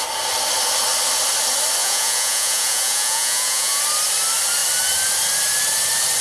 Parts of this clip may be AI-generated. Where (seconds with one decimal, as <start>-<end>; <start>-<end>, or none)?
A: 1.8-3.8